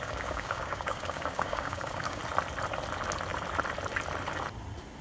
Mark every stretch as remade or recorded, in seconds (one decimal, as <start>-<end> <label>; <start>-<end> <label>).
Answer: 0.0-2.2 remade; 2.2-5.0 recorded